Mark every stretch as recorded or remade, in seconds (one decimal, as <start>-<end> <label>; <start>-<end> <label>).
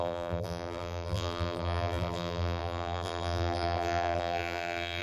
0.0-5.0 remade